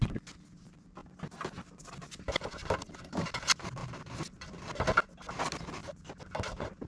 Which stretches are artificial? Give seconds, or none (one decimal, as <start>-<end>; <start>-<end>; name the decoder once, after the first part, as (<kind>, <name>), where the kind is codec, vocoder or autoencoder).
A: none